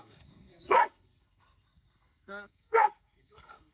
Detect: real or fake fake